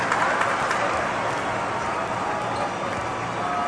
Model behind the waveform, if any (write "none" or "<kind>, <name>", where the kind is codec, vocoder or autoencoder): none